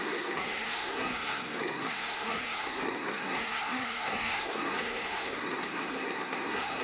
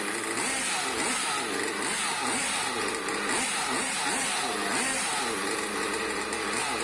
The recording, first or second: second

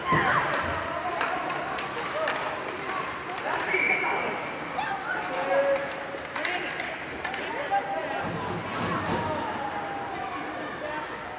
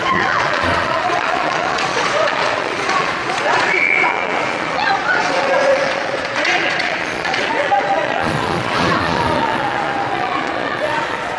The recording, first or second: first